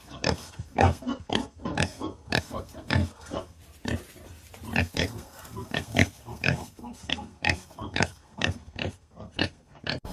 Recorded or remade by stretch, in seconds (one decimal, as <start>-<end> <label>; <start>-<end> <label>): 0.0-3.6 remade; 3.6-4.8 recorded; 4.8-10.1 remade